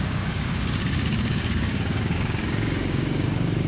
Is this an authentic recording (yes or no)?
no